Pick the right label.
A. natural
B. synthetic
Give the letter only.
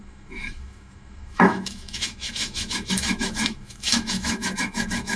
B